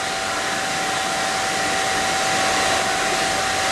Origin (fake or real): real